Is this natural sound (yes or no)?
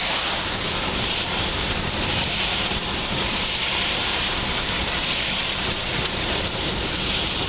no